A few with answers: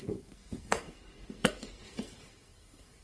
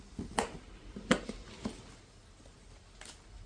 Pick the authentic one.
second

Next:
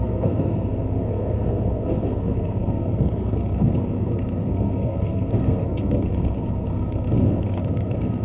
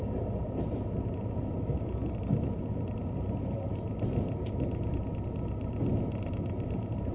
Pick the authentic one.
second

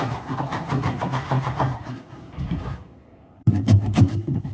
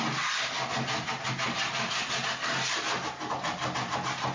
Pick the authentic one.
second